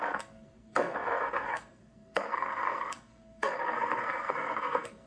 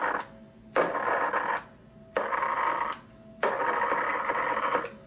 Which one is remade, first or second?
first